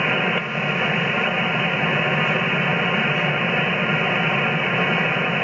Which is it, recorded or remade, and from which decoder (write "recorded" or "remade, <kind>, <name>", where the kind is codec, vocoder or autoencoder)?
recorded